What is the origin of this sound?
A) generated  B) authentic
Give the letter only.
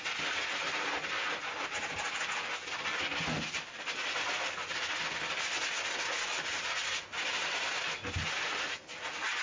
B